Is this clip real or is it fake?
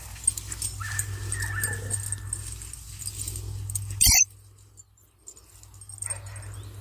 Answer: real